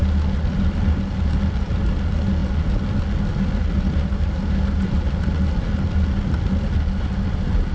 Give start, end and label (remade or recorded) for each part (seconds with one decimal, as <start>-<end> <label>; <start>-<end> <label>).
0.0-7.7 recorded